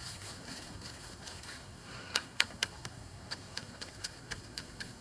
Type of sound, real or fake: fake